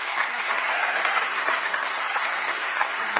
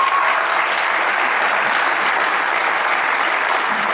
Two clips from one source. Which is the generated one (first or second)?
first